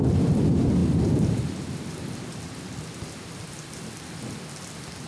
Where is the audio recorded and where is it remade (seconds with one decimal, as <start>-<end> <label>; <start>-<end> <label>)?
0.0-5.1 recorded